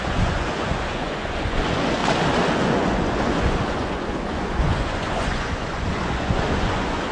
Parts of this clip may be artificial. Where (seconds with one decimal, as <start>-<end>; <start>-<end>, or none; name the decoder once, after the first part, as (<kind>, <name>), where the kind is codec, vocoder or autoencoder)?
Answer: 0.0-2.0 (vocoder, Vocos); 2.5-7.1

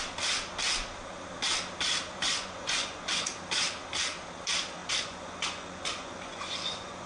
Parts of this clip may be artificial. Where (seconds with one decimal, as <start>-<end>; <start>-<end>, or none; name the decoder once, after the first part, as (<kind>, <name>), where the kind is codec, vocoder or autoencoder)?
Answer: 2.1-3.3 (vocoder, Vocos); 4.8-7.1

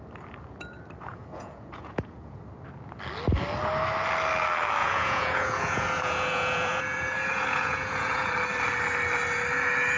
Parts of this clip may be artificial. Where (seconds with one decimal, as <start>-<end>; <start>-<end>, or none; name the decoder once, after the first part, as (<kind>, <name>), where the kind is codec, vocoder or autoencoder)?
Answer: 1.1-2.4 (vocoder, Vocos); 4.8-8.3

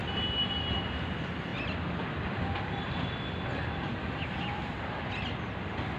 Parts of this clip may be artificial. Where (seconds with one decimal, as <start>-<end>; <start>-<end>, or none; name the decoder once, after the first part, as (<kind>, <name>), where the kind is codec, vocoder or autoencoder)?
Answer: none

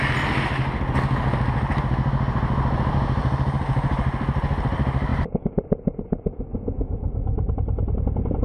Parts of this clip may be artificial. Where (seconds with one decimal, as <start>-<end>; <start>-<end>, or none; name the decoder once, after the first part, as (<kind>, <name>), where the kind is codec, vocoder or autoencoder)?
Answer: 6.5-7.5 (vocoder, Vocos)

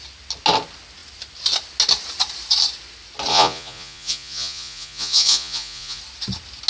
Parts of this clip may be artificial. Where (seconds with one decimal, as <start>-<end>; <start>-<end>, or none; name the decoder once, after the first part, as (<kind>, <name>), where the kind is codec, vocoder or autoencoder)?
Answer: 3.3-6.0 (vocoder, Vocos)

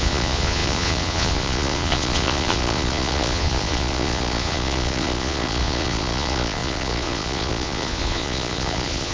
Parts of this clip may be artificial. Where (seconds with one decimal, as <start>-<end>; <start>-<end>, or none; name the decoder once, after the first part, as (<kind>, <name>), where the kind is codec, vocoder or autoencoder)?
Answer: 0.0-9.1 (vocoder, Vocos)